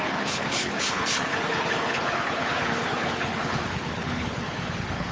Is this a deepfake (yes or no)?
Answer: yes